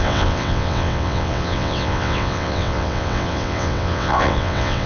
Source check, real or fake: fake